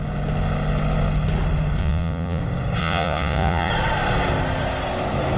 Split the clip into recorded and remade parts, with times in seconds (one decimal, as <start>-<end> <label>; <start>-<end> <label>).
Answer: 0.0-1.8 recorded; 1.8-2.4 remade; 2.4-2.8 recorded; 2.8-3.7 remade; 3.7-5.4 recorded